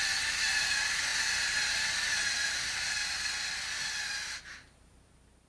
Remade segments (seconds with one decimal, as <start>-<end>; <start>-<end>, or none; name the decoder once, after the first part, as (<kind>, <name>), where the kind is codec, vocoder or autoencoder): none